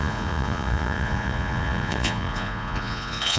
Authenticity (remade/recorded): remade